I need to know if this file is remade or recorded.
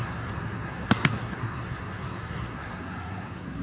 remade